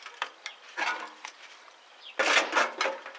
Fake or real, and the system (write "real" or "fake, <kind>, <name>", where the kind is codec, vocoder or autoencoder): real